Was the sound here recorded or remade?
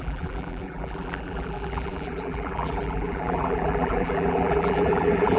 remade